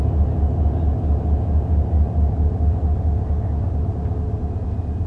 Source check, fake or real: real